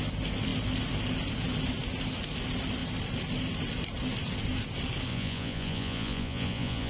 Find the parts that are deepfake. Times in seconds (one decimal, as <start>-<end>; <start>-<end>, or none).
5.1-6.9